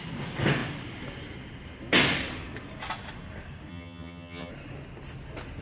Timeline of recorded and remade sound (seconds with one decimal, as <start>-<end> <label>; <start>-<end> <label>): 0.0-3.7 recorded; 3.7-4.5 remade; 4.5-5.6 recorded